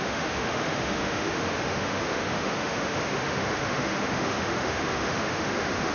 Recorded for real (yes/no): no